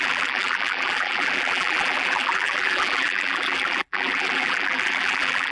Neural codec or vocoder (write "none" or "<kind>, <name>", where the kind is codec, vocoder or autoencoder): vocoder, BigVGAN v2